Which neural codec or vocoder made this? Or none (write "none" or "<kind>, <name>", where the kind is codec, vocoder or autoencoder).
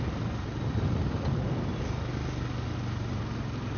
none